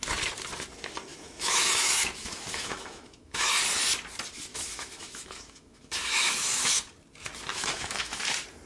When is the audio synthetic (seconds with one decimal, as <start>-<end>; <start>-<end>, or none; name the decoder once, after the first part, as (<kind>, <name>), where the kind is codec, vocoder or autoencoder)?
1.1-3.5 (autoencoder, DAC-VAE); 4.5-6.8; 7.5-8.2